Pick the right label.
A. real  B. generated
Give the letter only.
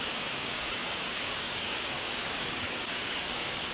B